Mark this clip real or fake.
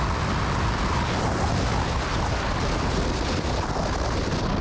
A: real